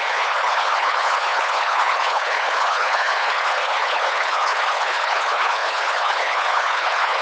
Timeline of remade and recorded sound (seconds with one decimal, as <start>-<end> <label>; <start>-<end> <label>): 0.0-7.2 remade